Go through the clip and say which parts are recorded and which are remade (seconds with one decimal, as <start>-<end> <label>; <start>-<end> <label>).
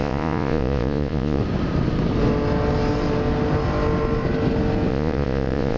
0.0-1.4 remade; 1.4-4.9 recorded; 4.9-5.8 remade